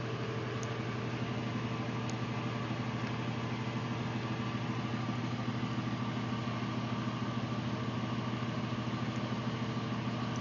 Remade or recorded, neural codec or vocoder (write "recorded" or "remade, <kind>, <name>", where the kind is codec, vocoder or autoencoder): recorded